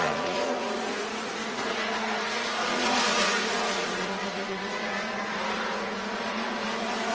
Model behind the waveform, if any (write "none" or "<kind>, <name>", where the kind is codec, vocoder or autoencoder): vocoder, Vocos